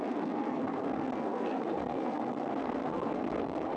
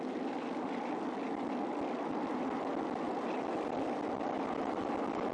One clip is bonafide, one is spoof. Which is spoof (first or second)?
first